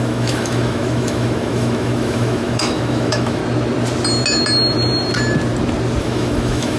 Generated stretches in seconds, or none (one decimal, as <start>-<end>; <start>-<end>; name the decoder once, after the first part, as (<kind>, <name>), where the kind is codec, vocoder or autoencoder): 0.0-3.4 (autoencoder, DAC-VAE); 6.0-6.8